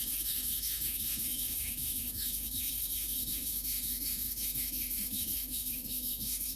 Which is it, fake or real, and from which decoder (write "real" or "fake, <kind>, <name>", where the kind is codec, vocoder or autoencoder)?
fake, autoencoder, DAC-VAE